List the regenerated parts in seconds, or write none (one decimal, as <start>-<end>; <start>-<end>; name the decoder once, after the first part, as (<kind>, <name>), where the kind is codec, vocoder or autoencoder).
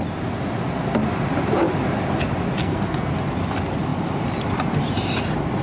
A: 2.6-3.1 (codec, SNAC)